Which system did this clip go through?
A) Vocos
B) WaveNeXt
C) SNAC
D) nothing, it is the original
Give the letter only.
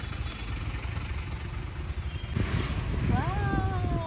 D